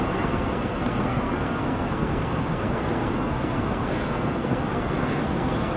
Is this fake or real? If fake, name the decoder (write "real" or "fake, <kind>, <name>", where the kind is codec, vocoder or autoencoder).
fake, codec, SNAC